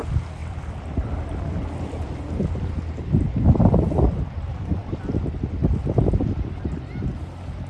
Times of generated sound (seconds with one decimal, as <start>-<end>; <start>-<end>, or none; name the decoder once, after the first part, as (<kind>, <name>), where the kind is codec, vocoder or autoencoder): 0.4-5.0 (vocoder, BigVGAN v2); 5.6-6.5